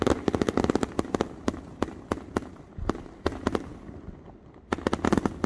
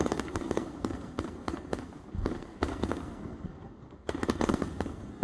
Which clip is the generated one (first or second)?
second